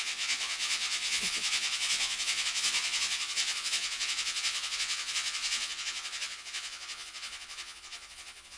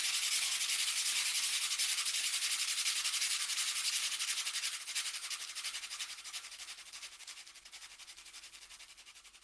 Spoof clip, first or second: first